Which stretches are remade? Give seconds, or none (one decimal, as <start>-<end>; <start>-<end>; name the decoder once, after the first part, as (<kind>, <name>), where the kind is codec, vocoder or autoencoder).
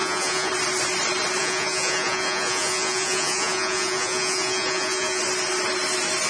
0.0-0.5 (vocoder, Vocos); 1.4-5.2